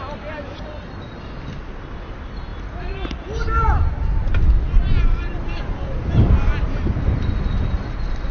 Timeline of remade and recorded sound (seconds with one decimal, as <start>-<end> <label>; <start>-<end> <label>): 0.0-8.3 recorded